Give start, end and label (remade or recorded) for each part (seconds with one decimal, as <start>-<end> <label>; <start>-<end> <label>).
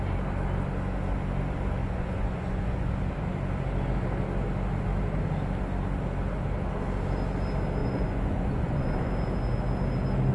0.0-1.8 recorded; 1.8-2.9 remade; 2.9-7.8 recorded; 7.8-9.1 remade; 9.1-10.3 recorded